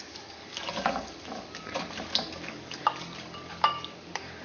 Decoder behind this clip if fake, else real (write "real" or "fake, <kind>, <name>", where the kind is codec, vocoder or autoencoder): fake, codec, DAC